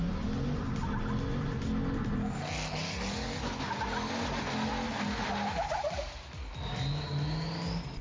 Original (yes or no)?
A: yes